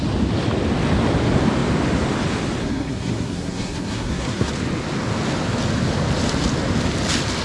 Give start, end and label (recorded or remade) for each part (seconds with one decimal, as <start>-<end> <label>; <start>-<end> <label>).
0.0-2.6 recorded; 2.6-4.5 remade; 4.5-7.4 recorded